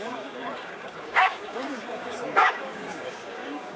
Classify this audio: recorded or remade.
remade